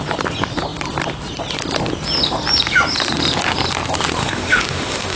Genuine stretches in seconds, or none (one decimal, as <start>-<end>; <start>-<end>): 0.0-4.2